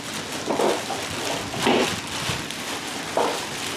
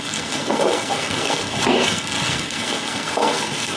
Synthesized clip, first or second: second